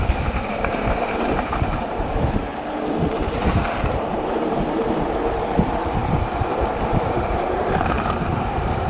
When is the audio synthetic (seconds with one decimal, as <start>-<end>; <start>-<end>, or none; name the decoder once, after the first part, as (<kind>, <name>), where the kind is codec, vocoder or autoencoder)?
0.0-2.5 (vocoder, BigVGAN v2); 3.3-8.9

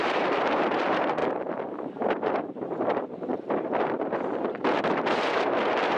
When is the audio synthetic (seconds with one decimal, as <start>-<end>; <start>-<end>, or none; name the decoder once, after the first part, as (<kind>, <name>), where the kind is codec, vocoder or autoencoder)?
0.0-6.0 (vocoder, BigVGAN v2)

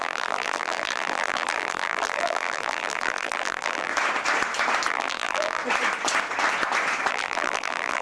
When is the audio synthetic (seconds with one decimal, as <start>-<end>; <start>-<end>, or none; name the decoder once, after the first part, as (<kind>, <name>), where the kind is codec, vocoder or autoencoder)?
0.0-3.9 (vocoder, BigVGAN v2); 4.9-5.6; 7.1-8.0

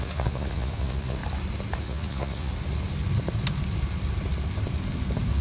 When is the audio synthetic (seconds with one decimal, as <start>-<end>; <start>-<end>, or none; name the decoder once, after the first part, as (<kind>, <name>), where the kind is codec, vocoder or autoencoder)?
0.0-1.2 (vocoder, Vocos); 1.8-2.5

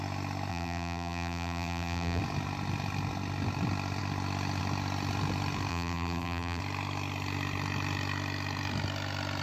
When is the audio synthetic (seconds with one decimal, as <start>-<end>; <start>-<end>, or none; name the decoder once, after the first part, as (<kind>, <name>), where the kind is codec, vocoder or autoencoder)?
0.5-2.2 (vocoder, BigVGAN v2); 5.7-6.6

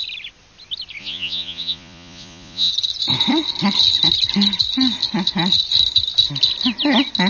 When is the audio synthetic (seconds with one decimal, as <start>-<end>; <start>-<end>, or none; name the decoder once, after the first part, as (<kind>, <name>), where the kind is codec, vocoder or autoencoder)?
1.0-2.7 (vocoder, Vocos)